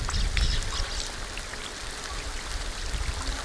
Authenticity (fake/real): real